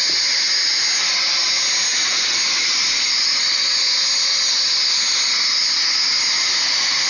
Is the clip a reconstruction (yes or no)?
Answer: no